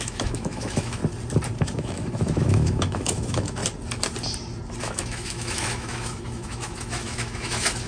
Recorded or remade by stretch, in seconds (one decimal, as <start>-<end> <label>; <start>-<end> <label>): 0.0-1.0 remade; 1.0-1.6 recorded; 1.6-3.6 remade; 3.6-4.8 recorded; 4.8-7.9 remade